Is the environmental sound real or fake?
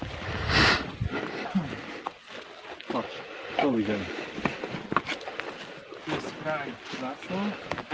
real